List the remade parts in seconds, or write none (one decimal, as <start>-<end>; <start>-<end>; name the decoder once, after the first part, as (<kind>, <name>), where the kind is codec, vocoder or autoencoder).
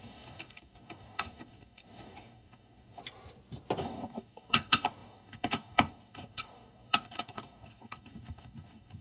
0.0-3.0 (codec, DAC); 3.8-9.0